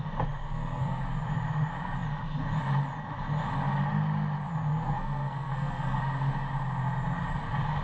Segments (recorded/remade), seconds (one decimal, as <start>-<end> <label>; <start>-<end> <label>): 0.0-0.4 recorded; 0.4-1.0 remade; 1.0-4.7 recorded; 4.7-6.0 remade; 6.0-7.8 recorded